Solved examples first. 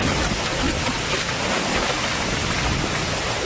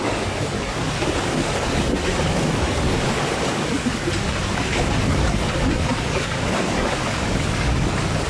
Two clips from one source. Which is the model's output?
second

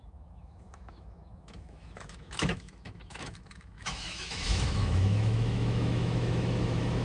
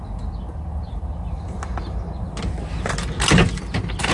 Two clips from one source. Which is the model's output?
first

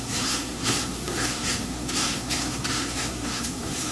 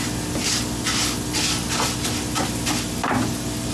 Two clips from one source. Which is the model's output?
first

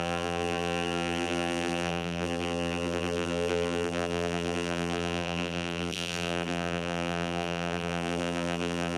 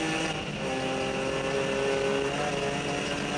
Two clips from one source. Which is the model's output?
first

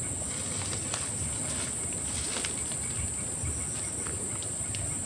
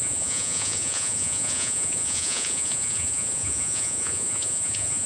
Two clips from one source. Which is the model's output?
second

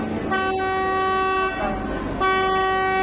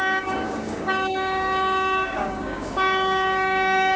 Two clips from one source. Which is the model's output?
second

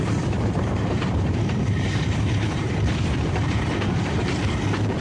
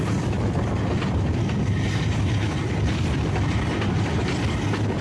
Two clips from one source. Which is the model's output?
first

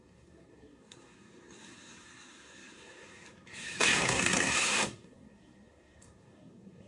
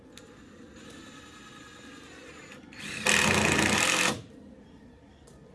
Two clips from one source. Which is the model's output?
first